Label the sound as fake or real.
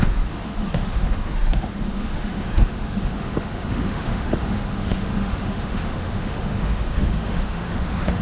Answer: fake